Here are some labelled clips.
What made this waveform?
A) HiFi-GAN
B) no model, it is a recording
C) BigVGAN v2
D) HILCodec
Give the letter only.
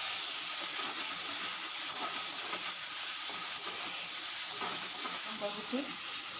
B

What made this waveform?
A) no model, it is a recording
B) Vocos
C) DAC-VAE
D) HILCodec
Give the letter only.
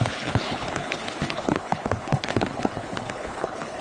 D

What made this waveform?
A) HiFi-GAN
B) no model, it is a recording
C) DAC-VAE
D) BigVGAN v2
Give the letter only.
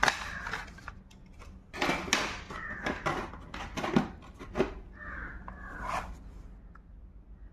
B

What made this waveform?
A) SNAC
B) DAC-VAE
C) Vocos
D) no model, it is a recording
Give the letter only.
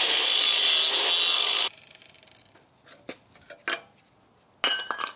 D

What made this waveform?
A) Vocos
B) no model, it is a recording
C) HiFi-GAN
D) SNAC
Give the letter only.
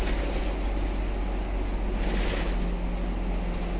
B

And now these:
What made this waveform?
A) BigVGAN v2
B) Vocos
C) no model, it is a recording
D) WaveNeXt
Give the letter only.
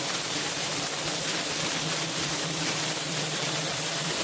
A